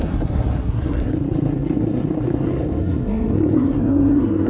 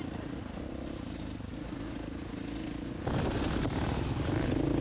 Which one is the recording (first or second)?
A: second